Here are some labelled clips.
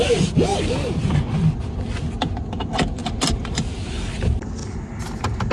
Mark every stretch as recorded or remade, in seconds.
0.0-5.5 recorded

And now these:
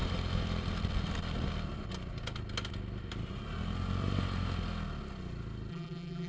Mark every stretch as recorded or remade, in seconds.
0.0-5.7 recorded; 5.7-6.3 remade